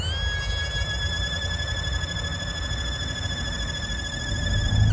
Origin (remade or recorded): recorded